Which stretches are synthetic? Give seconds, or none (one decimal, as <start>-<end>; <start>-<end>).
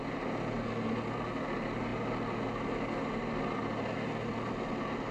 none